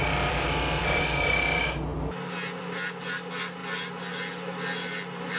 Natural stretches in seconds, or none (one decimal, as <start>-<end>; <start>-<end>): 1.0-5.4